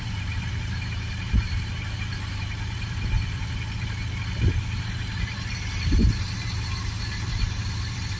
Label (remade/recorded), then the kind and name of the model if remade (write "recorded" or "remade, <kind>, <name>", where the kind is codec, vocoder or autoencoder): remade, vocoder, BigVGAN v2